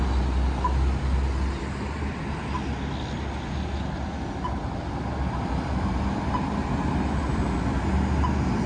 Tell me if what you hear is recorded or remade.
recorded